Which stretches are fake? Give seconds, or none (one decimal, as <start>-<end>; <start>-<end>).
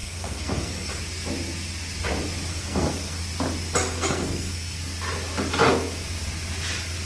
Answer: 0.0-1.0; 2.5-3.2; 3.8-4.8